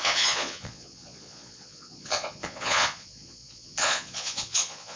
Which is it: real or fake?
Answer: fake